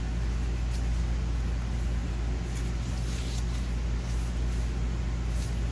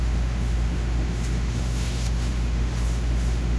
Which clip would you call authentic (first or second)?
first